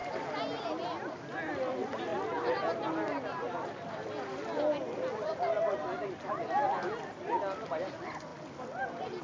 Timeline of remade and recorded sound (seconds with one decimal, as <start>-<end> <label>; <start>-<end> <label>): 0.0-9.2 recorded